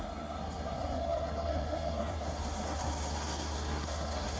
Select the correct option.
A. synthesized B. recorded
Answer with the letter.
A